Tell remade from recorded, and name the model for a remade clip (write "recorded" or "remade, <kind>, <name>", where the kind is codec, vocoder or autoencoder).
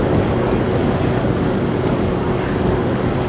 remade, codec, DAC